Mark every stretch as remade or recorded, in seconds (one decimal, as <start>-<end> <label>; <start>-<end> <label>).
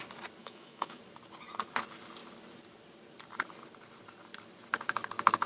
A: 0.0-0.4 recorded; 0.4-1.0 remade; 1.0-5.5 recorded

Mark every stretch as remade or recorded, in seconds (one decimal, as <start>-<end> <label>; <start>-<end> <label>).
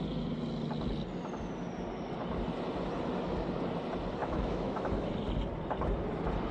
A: 0.0-4.2 recorded; 4.2-5.1 remade; 5.1-6.5 recorded